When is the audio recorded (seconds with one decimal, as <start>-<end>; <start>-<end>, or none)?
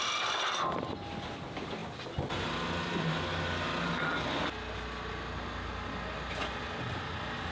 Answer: 0.0-7.5